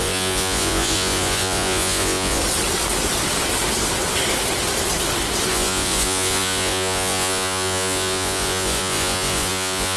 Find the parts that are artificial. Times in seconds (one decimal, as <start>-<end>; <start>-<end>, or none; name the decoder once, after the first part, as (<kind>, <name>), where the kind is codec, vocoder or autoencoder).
0.0-2.4 (vocoder, Vocos); 5.5-10.0